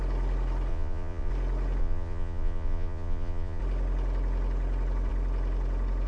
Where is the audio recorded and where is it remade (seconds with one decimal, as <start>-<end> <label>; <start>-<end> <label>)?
0.0-0.7 recorded; 0.7-1.3 remade; 1.3-1.8 recorded; 1.8-3.6 remade; 3.6-6.1 recorded